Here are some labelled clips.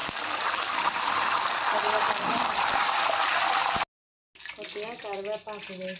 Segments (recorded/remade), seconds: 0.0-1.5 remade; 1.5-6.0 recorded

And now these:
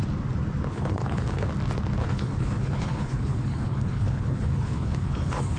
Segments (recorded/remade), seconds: 0.0-0.7 recorded; 0.7-1.5 remade; 1.5-2.0 recorded; 2.0-5.6 remade

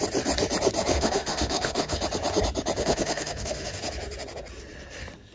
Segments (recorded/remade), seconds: 0.0-0.9 recorded; 0.9-2.0 remade; 2.0-2.8 recorded; 2.8-3.8 remade; 3.8-5.3 recorded

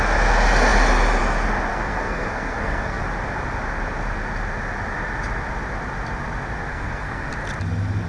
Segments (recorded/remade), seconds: 0.0-1.7 recorded; 1.7-3.0 remade; 3.0-6.7 recorded; 6.7-7.3 remade; 7.3-8.1 recorded